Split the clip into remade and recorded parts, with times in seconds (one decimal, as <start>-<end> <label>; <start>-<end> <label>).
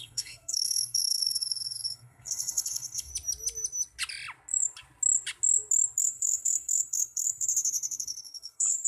0.0-3.1 remade; 3.1-6.0 recorded; 6.0-8.9 remade